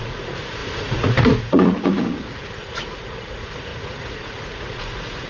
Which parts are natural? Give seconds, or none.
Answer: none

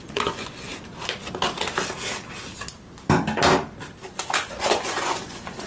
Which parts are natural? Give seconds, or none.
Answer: 0.7-4.1

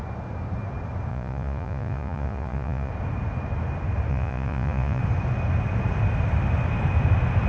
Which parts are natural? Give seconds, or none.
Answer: 0.0-1.1; 2.9-4.1; 5.0-7.5

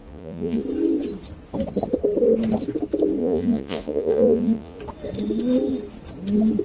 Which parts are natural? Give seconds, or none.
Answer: 0.6-3.2; 4.8-6.6

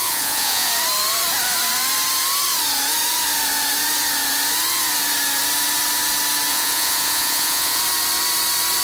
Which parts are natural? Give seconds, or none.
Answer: 0.7-6.5; 7.8-8.8